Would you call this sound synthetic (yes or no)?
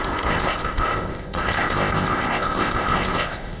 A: yes